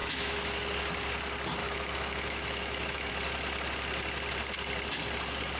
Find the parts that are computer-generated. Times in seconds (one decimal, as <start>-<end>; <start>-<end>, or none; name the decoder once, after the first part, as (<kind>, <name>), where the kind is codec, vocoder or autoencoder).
0.0-0.7 (autoencoder, DAC-VAE); 1.6-3.1